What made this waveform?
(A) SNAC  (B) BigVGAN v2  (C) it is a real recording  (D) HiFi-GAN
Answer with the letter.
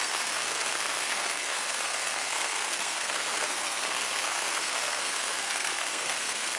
A